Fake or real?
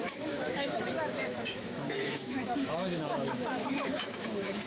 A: fake